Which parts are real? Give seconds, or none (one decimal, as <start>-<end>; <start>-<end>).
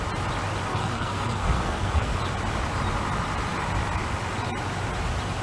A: 0.0-0.7; 2.2-5.4